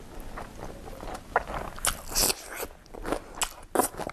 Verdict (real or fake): real